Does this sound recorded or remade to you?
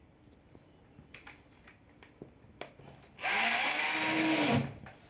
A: recorded